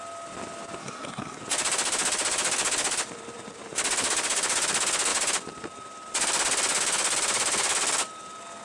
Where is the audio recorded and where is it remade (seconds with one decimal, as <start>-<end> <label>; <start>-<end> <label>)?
0.0-0.8 recorded; 0.8-1.4 remade; 1.4-8.6 recorded